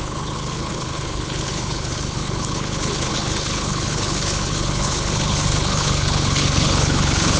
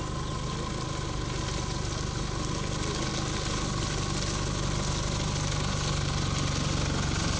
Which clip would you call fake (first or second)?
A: first